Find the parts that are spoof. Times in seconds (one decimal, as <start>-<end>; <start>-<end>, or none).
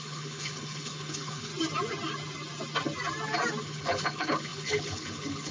0.0-1.5; 3.6-5.5